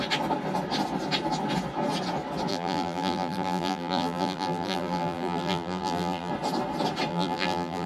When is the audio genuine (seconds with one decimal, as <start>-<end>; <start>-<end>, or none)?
0.0-2.5; 6.3-7.1